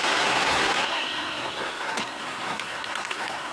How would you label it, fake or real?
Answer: fake